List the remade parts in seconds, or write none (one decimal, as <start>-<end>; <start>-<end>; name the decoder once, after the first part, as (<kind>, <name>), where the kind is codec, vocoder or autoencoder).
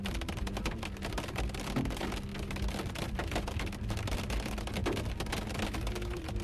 none